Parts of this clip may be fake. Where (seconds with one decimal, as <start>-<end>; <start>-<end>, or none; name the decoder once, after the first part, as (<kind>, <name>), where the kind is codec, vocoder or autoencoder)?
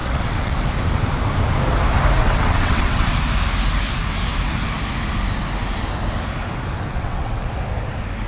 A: 0.0-0.6 (vocoder, WaveNeXt); 2.2-3.1; 6.9-7.5